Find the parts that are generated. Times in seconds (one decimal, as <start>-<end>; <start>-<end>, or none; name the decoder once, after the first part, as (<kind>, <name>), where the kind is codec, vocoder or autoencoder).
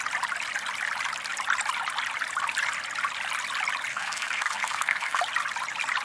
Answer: 3.9-5.2 (codec, SNAC)